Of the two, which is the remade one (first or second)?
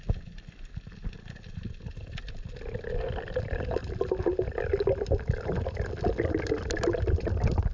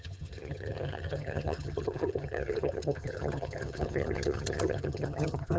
second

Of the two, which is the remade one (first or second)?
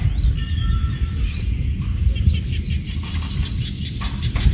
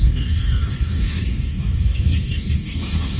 second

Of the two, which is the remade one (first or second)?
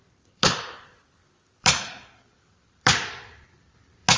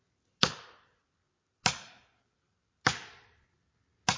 first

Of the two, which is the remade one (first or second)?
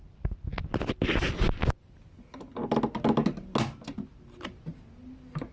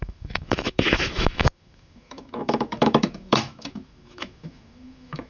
second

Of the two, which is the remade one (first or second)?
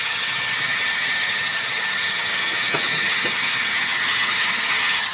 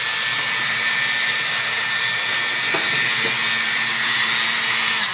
first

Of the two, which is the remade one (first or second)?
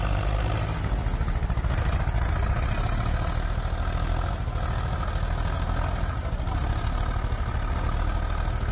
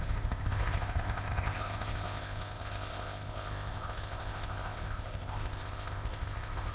second